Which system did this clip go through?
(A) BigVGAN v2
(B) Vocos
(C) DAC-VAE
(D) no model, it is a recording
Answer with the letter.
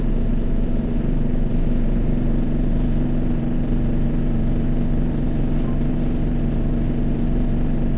A